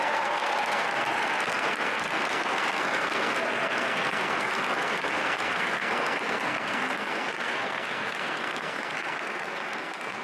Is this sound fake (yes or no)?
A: yes